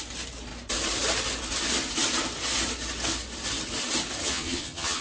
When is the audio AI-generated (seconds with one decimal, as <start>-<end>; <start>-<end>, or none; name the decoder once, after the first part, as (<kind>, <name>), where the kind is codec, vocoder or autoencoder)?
4.2-5.0 (vocoder, HiFi-GAN)